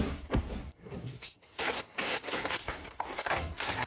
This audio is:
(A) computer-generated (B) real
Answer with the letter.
A